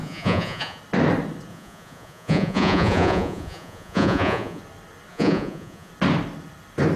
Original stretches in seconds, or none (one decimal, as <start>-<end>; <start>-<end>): 0.8-1.5; 4.6-5.1; 5.9-7.0

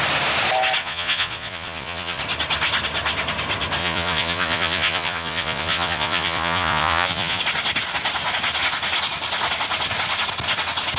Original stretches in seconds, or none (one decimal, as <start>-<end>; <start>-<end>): 0.0-0.8; 2.2-3.8; 7.4-11.0

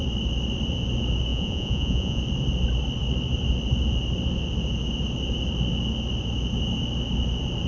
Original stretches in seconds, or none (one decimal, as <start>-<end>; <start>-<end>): 0.0-1.3; 2.2-7.7

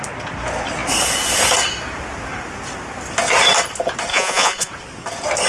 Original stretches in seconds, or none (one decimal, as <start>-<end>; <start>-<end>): 0.0-4.1; 4.7-5.5

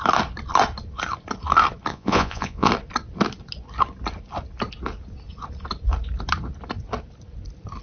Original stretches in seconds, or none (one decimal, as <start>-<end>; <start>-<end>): 0.0-1.9; 2.7-7.8

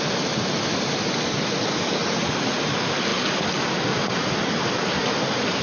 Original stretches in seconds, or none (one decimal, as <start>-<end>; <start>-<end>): 0.0-2.0; 2.7-5.6

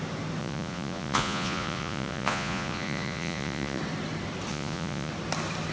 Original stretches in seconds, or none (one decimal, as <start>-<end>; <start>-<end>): 0.0-0.4; 3.8-4.5; 5.1-5.7

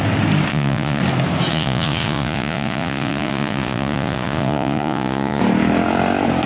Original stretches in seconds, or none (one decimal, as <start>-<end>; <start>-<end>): 0.0-0.5; 1.0-1.5; 5.4-6.5